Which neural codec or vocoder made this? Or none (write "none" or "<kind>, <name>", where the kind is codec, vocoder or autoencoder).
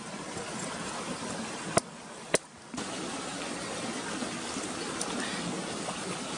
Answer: none